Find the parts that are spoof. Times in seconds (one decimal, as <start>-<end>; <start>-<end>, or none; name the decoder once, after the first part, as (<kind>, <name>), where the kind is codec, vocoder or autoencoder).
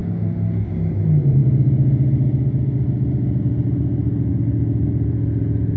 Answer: 0.0-0.7 (autoencoder, DAC-VAE)